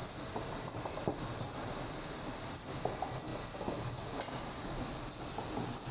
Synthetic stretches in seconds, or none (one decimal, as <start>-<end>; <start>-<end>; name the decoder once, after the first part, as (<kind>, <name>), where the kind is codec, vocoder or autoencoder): 0.7-3.3 (vocoder, BigVGAN v2); 4.4-5.9